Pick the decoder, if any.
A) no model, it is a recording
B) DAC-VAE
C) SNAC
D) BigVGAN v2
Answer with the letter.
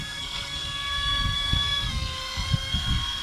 C